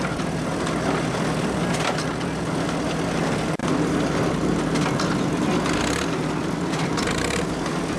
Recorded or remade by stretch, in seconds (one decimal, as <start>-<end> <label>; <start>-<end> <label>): 0.0-8.0 recorded